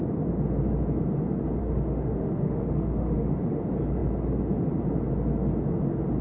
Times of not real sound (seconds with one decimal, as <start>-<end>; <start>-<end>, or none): 1.6-3.6